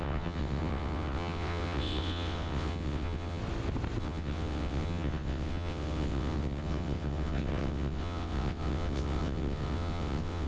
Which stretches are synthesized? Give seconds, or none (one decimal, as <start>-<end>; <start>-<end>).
0.0-3.4; 4.0-10.5

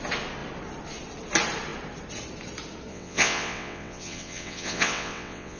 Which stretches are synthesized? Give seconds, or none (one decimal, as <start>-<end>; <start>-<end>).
2.9-5.6

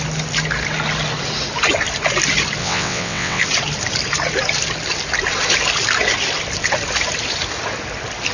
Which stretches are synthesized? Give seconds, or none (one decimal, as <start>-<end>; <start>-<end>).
2.6-3.4